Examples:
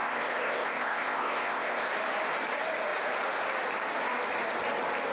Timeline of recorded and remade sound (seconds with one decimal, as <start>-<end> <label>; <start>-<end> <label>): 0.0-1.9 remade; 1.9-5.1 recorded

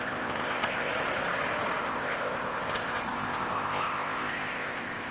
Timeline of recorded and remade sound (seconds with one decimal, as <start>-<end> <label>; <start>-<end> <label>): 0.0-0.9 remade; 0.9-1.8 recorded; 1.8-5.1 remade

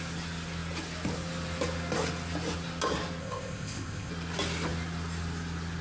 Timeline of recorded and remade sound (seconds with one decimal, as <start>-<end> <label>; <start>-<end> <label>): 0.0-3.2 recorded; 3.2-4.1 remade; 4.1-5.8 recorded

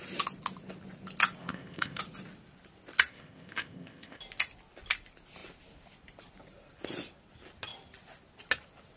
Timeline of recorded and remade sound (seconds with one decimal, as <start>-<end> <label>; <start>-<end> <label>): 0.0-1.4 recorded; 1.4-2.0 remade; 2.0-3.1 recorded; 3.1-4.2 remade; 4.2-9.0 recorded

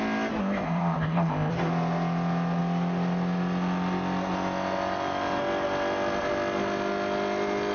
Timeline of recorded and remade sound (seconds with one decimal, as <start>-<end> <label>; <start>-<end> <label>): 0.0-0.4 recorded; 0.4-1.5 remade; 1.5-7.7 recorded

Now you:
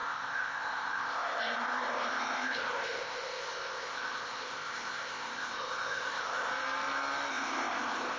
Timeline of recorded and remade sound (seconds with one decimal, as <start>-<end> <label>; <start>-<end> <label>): 0.0-6.5 remade; 6.5-7.3 recorded; 7.3-8.2 remade